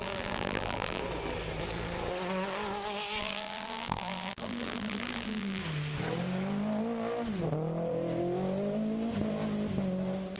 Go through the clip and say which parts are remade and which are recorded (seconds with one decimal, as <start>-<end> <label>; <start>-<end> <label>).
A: 0.0-1.0 remade; 1.0-3.2 recorded; 3.2-5.6 remade; 5.6-10.4 recorded